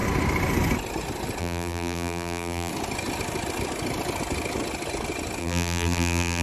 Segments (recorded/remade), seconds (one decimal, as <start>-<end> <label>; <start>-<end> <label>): 0.0-1.4 recorded; 1.4-2.7 remade; 2.7-5.4 recorded; 5.4-6.4 remade

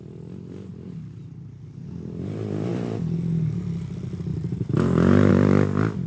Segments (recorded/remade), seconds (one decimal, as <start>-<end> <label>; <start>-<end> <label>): 0.0-4.3 recorded; 4.3-5.3 remade; 5.3-6.1 recorded

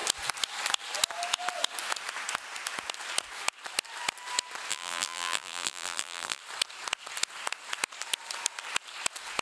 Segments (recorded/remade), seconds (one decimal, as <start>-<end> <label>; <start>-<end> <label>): 0.0-4.7 recorded; 4.7-6.4 remade; 6.4-9.4 recorded

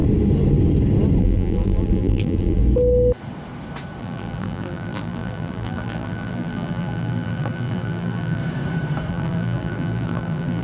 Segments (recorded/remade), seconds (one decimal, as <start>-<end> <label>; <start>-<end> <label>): 0.0-1.2 recorded; 1.2-2.6 remade; 2.6-4.0 recorded; 4.0-8.4 remade; 8.4-9.1 recorded; 9.1-10.6 remade

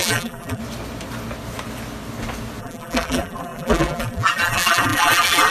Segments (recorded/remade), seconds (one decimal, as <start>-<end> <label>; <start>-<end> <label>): 0.0-0.6 remade; 0.6-2.6 recorded; 2.6-5.5 remade

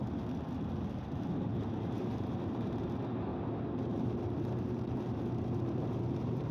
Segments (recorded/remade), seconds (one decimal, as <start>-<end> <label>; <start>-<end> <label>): 0.0-1.5 recorded; 1.5-2.8 remade; 2.8-3.3 recorded; 3.3-6.5 remade

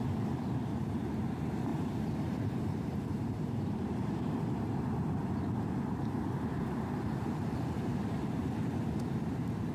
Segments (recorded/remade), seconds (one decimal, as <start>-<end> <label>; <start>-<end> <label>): 0.0-9.7 remade